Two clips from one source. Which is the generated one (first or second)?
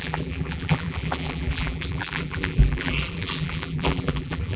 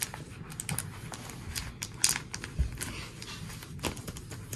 first